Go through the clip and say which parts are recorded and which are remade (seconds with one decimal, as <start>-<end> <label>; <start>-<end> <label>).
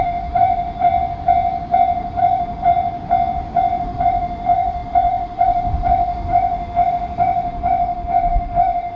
0.0-0.9 remade; 0.9-2.0 recorded; 2.0-2.7 remade; 2.7-3.8 recorded; 3.8-9.0 remade